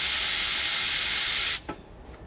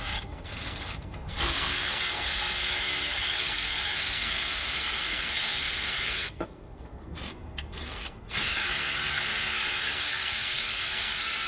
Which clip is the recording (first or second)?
first